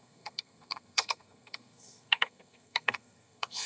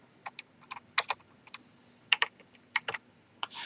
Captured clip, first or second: second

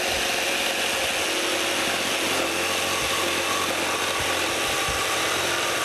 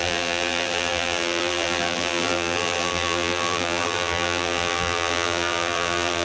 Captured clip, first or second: first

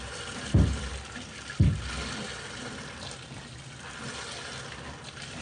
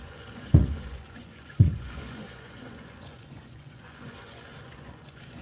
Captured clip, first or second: first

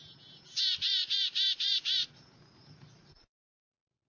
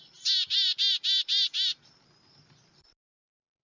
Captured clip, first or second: second